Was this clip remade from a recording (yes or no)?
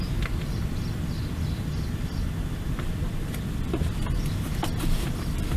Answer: yes